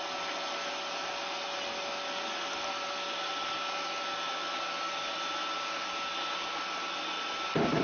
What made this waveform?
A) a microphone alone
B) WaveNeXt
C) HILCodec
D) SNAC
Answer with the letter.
A